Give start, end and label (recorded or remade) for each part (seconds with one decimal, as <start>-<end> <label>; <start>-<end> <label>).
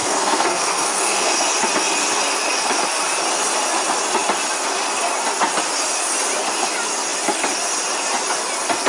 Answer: 0.0-1.3 remade; 1.3-8.9 recorded